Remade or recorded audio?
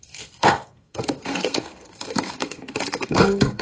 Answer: remade